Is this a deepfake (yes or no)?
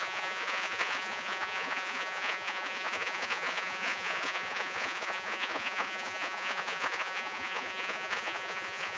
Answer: yes